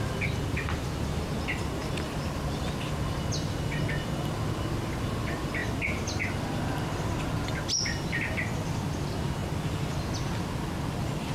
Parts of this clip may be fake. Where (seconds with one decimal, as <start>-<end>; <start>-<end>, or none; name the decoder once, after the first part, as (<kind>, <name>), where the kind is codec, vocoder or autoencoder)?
1.8-2.6 (vocoder, BigVGAN v2)